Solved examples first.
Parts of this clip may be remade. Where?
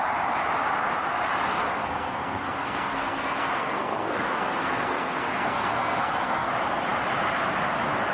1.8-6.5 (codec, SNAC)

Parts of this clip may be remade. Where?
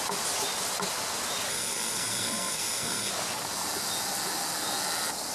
1.5-3.1 (codec, SNAC)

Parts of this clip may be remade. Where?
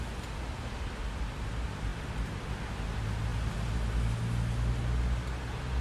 none